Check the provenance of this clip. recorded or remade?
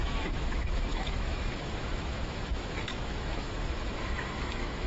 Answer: remade